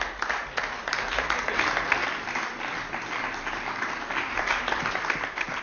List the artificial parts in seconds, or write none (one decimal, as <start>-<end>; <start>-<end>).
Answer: none